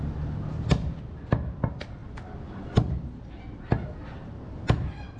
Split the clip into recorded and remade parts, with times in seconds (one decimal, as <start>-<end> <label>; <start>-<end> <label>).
0.0-5.2 recorded